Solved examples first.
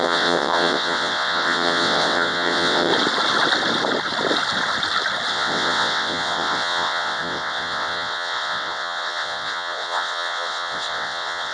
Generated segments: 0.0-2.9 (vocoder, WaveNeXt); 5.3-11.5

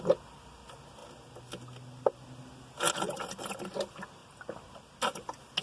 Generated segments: none

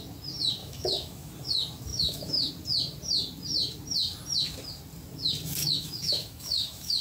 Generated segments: 0.6-1.3 (autoencoder, DAC-VAE); 1.9-2.5; 5.6-7.0

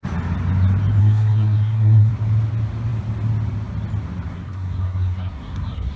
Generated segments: 1.0-2.1 (codec, SNAC); 4.3-6.0

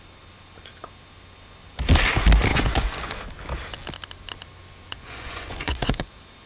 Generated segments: 2.5-3.1 (vocoder, Vocos); 4.9-6.1

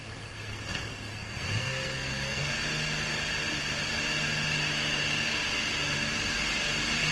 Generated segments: 0.0-2.5 (codec, SNAC)